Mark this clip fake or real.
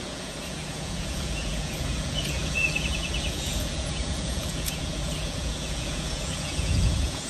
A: fake